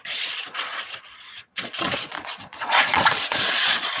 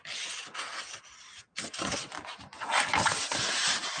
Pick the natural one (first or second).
second